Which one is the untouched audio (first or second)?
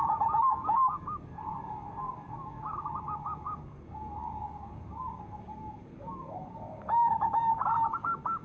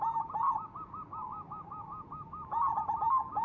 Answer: second